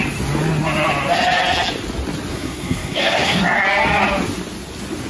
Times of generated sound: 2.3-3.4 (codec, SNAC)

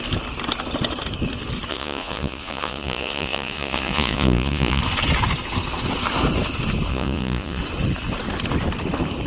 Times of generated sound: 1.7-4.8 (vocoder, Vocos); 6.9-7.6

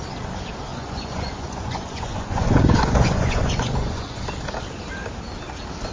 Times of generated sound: 0.7-4.2 (vocoder, Vocos)

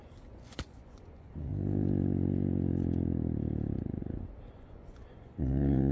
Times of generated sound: 0.0-1.5 (vocoder, Vocos); 4.5-5.9

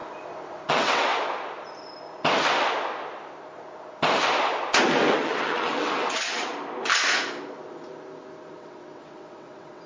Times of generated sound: 0.7-1.1 (vocoder, WaveNeXt); 5.1-6.5; 8.5-9.9

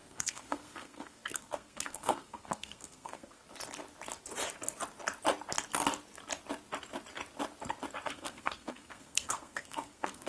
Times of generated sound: 0.0-3.4 (codec, SNAC); 8.1-10.3